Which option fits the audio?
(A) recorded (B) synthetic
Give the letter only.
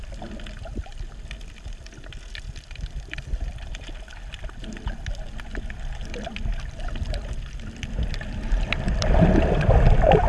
A